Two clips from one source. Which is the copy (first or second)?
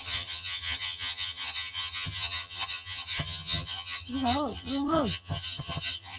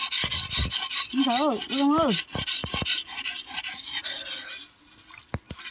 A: first